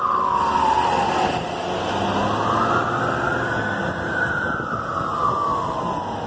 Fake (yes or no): no